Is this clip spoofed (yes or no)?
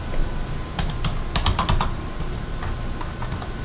no